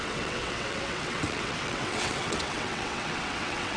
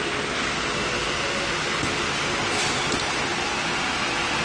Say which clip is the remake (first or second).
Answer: first